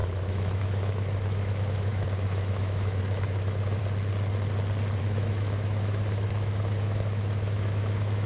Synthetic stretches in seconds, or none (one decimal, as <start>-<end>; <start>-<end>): 0.0-3.8; 5.0-8.3